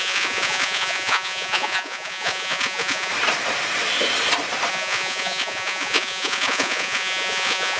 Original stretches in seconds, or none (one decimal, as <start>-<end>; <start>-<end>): 3.1-4.7